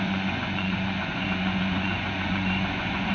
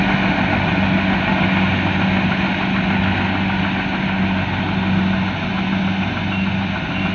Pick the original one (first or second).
second